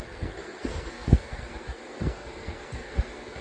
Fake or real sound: fake